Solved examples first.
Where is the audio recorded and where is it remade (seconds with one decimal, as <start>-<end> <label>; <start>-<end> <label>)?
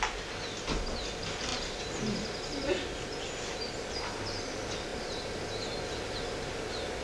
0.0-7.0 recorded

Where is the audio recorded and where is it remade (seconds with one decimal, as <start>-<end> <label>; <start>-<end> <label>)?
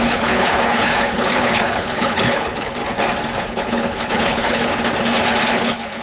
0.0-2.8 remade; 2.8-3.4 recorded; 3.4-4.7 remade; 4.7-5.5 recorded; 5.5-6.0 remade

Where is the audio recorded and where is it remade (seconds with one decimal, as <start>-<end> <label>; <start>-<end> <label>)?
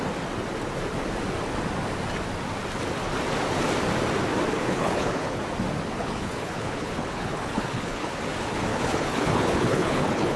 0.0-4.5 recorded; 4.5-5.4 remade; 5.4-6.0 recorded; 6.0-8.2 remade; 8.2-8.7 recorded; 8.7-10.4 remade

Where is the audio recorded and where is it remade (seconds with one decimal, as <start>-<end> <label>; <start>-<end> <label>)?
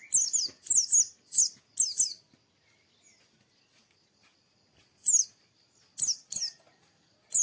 0.0-7.4 recorded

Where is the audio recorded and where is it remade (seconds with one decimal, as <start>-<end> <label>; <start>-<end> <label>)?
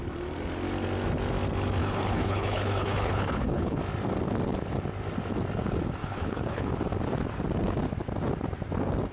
0.0-1.8 recorded; 1.8-3.8 remade; 3.8-6.0 recorded; 6.0-6.7 remade; 6.7-9.1 recorded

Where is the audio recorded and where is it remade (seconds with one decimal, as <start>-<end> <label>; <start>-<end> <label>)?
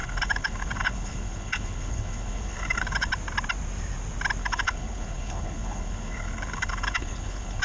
0.0-3.1 remade; 3.1-4.4 recorded; 4.4-7.6 remade